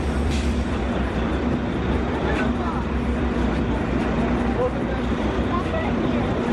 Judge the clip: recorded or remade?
remade